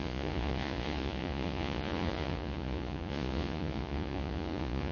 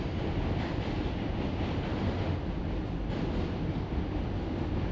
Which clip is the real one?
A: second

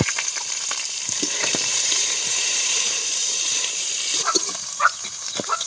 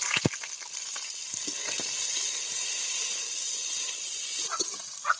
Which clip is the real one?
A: second